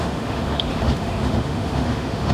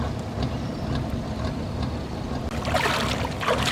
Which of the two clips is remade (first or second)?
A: first